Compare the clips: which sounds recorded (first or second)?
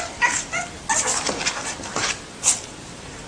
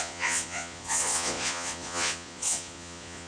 first